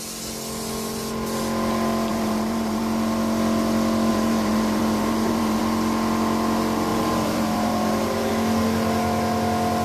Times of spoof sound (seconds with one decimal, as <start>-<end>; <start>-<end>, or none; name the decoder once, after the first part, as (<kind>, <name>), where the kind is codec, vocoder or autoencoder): 2.1-2.8 (vocoder, BigVGAN v2); 4.1-5.6; 6.9-8.3